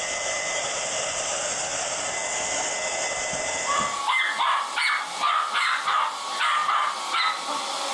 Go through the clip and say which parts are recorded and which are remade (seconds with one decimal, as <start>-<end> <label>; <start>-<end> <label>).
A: 0.0-6.6 recorded; 6.6-7.3 remade; 7.3-7.9 recorded